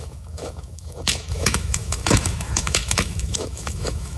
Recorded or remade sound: remade